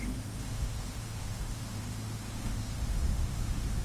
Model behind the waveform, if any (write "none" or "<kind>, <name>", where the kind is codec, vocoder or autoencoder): autoencoder, DAC-VAE